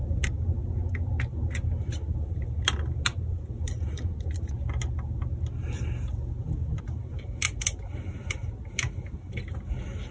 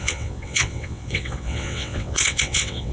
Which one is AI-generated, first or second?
second